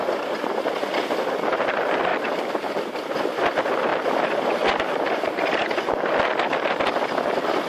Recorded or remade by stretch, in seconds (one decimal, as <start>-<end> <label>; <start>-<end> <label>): 0.0-7.7 recorded